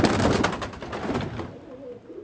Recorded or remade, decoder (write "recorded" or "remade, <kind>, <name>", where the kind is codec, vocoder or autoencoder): recorded